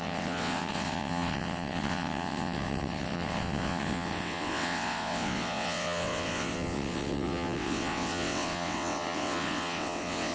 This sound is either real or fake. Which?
fake